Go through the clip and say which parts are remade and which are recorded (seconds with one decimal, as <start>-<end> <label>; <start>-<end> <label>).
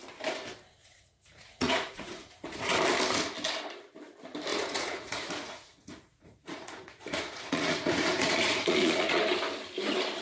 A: 0.0-0.8 recorded; 0.8-2.7 remade; 2.7-4.5 recorded; 4.5-9.2 remade; 9.2-10.2 recorded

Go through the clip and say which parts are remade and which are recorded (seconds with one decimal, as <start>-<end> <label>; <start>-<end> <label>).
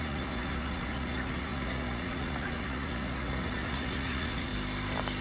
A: 0.0-4.5 remade; 4.5-5.2 recorded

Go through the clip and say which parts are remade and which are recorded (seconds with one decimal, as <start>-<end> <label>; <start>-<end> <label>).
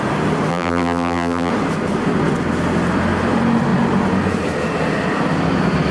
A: 0.0-0.5 recorded; 0.5-1.5 remade; 1.5-5.9 recorded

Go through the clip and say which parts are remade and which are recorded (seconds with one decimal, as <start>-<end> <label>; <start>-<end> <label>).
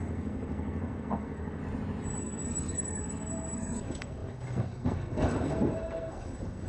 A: 0.0-1.6 remade; 1.6-2.2 recorded; 2.2-6.7 remade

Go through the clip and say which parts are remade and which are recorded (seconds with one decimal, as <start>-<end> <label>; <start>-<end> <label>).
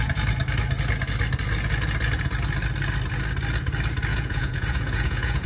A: 0.0-4.1 recorded; 4.1-5.5 remade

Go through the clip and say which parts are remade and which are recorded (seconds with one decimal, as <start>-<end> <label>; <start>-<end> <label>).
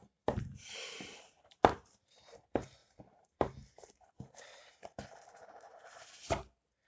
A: 0.0-2.4 remade; 2.4-2.8 recorded; 2.8-5.9 remade; 5.9-6.9 recorded